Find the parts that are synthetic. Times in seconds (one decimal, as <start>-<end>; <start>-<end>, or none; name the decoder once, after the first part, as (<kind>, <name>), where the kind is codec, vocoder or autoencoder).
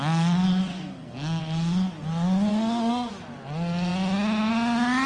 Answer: 0.7-1.4 (codec, SNAC); 2.5-3.1